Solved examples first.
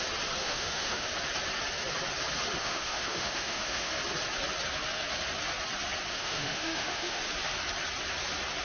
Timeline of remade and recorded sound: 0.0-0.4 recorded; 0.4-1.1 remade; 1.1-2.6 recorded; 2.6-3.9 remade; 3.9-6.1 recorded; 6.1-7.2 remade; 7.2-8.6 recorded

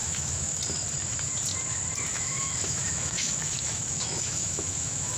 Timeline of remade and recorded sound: 0.0-0.6 remade; 0.6-2.1 recorded; 2.1-5.2 remade